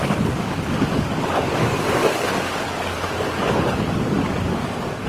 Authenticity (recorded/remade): remade